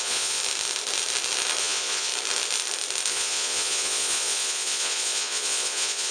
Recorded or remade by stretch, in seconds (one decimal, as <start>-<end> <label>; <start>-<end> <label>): 0.0-0.4 remade; 0.4-1.6 recorded; 1.6-2.1 remade; 2.1-3.1 recorded; 3.1-6.1 remade